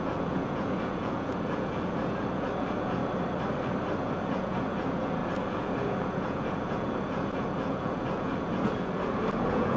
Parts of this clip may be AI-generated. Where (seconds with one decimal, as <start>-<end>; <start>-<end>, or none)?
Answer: 0.0-3.0; 4.0-9.8